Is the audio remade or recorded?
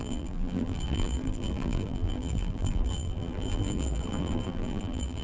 remade